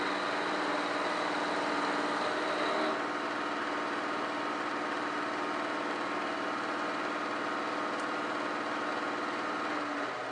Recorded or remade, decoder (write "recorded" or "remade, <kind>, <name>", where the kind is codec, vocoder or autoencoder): recorded